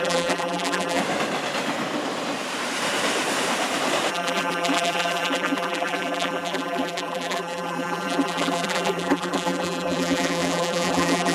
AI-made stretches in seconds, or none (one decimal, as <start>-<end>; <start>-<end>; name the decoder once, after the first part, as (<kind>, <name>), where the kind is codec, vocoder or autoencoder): 0.0-1.0 (vocoder, BigVGAN v2); 4.1-11.3